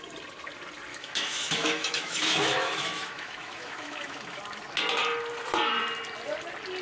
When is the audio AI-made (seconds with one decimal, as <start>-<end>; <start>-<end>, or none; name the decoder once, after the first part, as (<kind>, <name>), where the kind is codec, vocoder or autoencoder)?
0.9-4.4 (autoencoder, DAC-VAE)